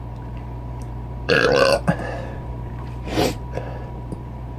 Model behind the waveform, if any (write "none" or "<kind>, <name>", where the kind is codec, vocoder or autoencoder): vocoder, BigVGAN v2